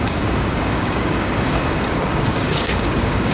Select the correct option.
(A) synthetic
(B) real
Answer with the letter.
A